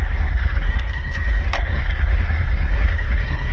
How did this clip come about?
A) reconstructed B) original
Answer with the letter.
A